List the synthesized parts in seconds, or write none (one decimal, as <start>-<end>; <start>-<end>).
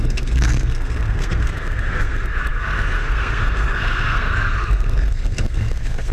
0.0-6.1